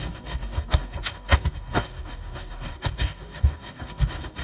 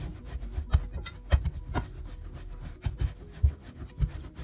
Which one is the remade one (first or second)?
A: first